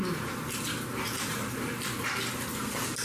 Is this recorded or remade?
recorded